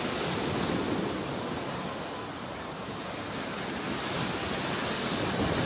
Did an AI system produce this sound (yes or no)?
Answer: no